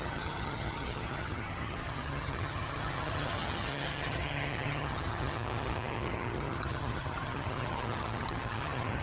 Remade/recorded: remade